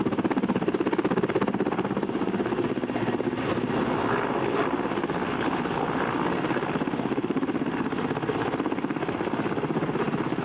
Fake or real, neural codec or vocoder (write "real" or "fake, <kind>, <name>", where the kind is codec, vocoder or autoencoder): real